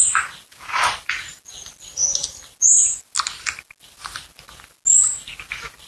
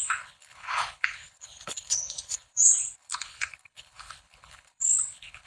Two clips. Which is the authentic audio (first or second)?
first